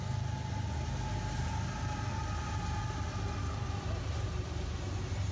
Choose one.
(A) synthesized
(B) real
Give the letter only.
B